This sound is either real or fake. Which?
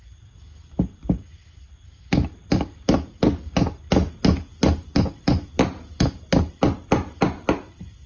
real